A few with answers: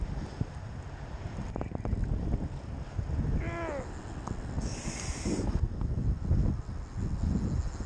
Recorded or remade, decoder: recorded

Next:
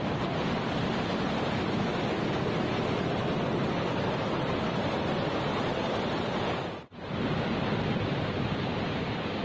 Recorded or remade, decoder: recorded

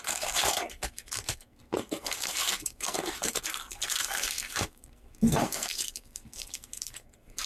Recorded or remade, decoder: remade, codec, SNAC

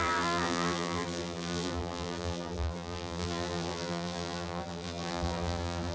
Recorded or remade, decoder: remade, vocoder, BigVGAN v2